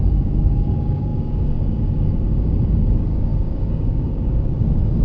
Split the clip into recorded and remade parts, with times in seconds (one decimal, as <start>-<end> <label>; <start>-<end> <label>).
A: 0.0-5.0 remade

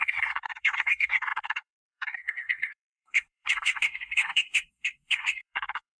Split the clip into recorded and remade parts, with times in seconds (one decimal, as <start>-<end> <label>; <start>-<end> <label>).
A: 0.0-6.0 remade

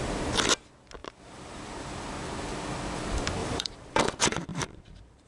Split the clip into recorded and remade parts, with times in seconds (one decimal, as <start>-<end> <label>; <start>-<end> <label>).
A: 0.0-1.0 recorded; 1.0-2.0 remade; 2.0-3.4 recorded; 3.4-4.0 remade; 4.0-4.5 recorded; 4.5-5.3 remade

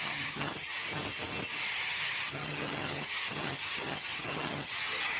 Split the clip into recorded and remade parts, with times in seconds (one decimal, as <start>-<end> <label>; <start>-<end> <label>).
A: 0.0-0.8 remade; 0.8-1.6 recorded; 1.6-5.2 remade